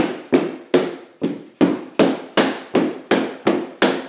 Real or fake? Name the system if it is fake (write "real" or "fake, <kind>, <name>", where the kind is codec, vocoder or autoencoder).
real